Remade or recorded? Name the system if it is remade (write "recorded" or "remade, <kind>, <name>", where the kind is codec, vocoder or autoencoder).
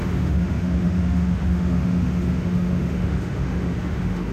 remade, autoencoder, DAC-VAE